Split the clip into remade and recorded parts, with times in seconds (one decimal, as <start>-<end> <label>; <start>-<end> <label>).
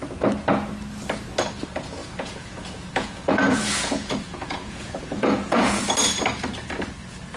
0.0-2.0 recorded; 2.0-5.8 remade; 5.8-7.4 recorded